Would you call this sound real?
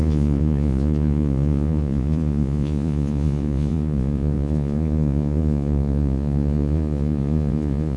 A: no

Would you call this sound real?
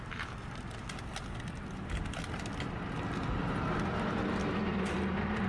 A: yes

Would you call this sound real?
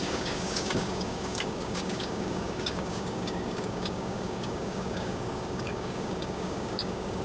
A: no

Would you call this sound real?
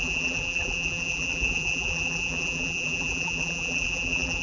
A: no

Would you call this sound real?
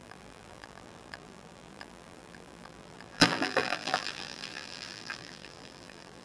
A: no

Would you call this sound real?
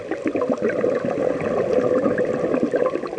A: yes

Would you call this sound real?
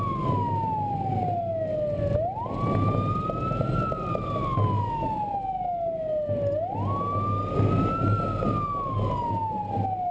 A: yes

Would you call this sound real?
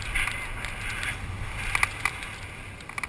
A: yes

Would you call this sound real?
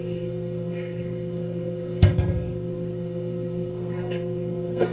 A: no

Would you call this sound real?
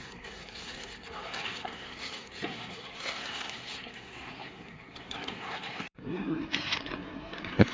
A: no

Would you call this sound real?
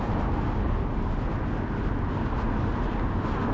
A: yes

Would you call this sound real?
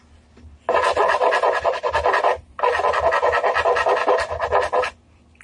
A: yes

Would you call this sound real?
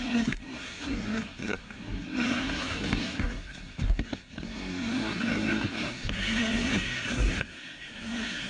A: no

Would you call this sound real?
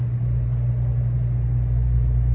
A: yes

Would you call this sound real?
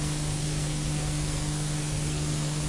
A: no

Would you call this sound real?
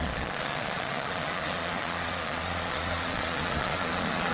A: no